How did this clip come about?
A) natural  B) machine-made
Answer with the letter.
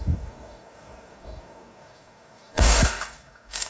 B